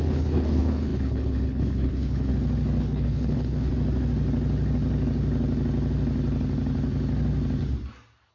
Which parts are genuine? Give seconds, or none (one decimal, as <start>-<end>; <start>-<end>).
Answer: 2.3-2.8; 3.7-8.3